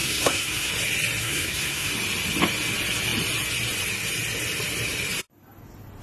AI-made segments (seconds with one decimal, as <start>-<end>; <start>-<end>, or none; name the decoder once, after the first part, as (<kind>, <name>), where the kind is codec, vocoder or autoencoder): 0.0-0.7 (codec, SNAC); 1.2-1.9